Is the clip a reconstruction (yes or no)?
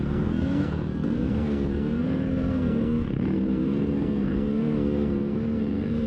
yes